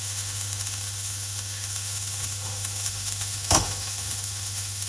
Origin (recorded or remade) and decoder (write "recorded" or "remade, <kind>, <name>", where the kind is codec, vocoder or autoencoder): remade, autoencoder, DAC-VAE